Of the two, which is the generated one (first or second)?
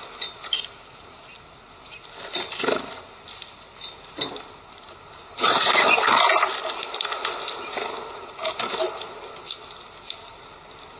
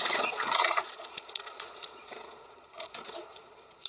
second